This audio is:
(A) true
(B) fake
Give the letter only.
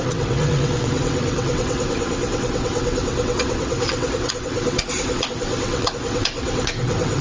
B